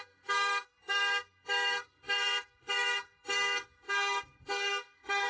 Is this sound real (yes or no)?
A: no